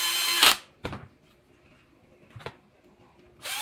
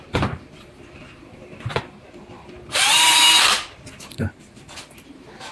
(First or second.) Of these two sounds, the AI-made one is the second